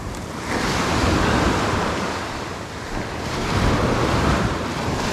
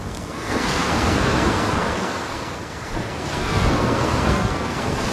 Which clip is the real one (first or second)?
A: first